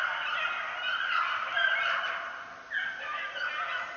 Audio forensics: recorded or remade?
recorded